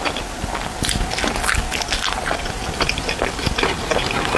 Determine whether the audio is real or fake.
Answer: real